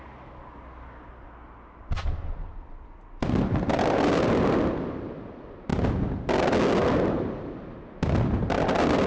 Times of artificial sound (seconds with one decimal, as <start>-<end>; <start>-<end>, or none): none

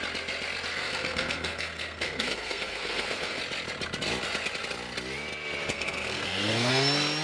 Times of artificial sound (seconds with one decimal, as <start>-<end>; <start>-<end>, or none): 0.7-3.4; 5.7-6.7

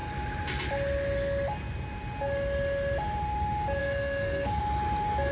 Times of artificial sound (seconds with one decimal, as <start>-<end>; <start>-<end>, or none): 3.8-4.6

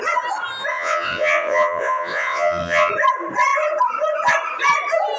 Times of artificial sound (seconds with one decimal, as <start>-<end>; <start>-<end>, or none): 0.7-2.9

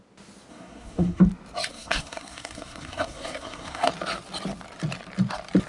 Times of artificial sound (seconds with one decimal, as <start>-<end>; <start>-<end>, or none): 0.5-1.2; 1.7-3.9

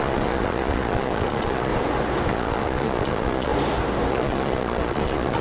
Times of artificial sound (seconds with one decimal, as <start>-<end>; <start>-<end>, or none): 0.0-1.7; 2.3-3.5; 4.1-5.4

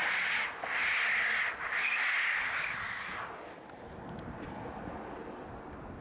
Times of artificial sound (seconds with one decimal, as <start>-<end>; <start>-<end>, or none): none